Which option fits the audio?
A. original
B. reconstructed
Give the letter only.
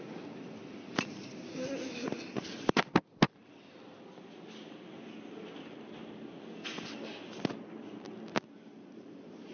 A